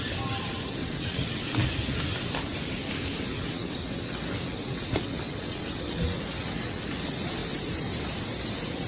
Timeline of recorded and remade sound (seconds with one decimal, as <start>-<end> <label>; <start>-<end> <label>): 0.0-0.8 recorded; 0.8-1.7 remade; 1.7-3.3 recorded; 3.3-7.0 remade; 7.0-8.9 recorded